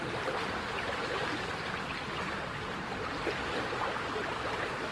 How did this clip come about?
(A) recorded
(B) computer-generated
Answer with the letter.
A